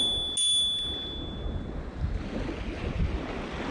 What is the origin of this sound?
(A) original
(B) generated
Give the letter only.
A